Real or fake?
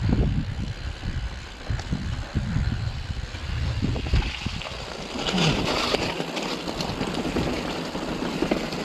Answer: real